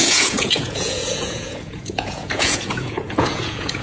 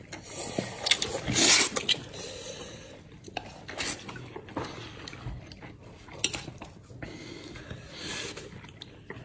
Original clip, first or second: second